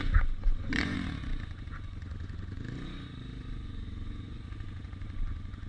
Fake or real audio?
fake